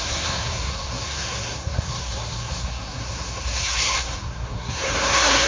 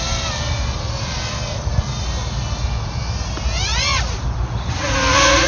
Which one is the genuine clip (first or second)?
second